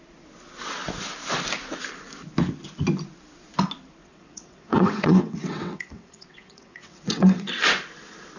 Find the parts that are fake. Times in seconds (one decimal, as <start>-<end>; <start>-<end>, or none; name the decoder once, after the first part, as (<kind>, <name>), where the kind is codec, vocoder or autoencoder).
4.0-7.5 (vocoder, WaveNeXt)

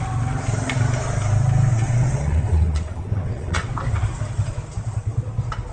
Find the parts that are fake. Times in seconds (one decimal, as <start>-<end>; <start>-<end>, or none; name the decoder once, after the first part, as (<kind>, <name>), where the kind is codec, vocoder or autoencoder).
1.7-3.7 (vocoder, WaveNeXt)